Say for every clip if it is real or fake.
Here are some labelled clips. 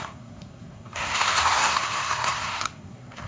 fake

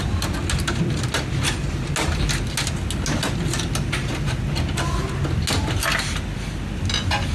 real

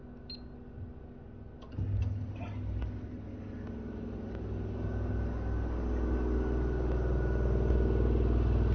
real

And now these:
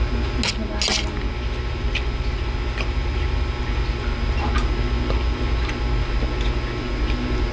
real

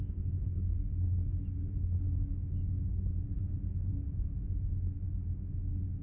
real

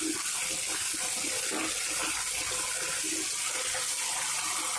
real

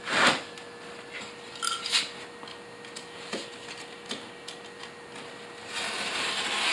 real